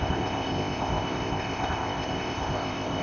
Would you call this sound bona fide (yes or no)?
no